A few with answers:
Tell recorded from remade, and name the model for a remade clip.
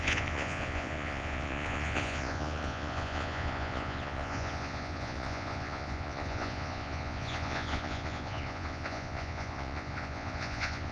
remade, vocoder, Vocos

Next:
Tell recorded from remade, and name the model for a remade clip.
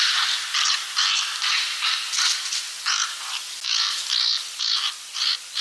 recorded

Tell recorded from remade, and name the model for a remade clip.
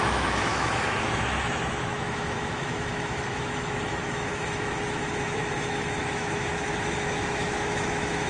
remade, autoencoder, DAC-VAE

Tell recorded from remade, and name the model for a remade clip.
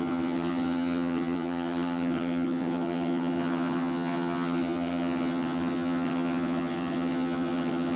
remade, vocoder, HiFi-GAN